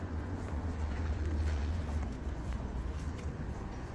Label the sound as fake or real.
fake